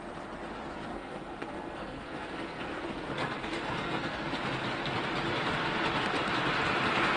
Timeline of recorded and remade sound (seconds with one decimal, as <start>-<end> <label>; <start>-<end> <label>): 0.0-0.9 recorded; 0.9-2.8 remade; 2.8-3.2 recorded; 3.2-4.3 remade; 4.3-7.2 recorded